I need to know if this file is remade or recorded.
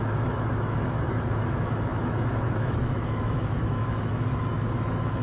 remade